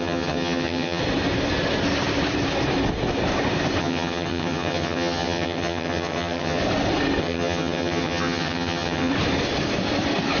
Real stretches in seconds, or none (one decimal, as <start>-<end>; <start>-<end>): 1.0-3.8; 6.6-7.2; 9.1-10.4

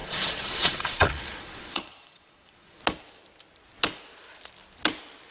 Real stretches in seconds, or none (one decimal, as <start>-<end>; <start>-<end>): 2.8-5.3

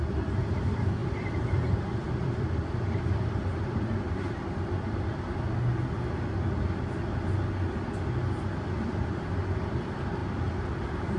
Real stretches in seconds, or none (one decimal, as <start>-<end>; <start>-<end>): 0.0-1.0; 5.3-11.2

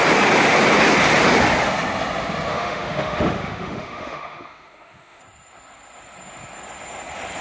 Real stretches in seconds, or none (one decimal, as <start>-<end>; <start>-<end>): 0.0-2.5; 5.2-7.4

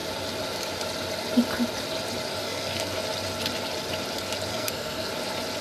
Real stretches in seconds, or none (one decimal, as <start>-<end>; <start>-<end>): 0.0-2.4; 3.0-4.5; 5.1-5.6

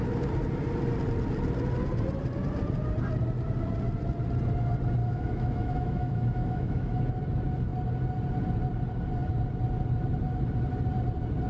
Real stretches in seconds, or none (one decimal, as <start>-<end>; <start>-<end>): 0.0-5.0; 7.0-11.5